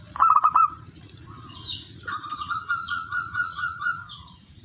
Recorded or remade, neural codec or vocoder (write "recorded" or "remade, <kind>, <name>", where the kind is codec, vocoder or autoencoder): remade, vocoder, Vocos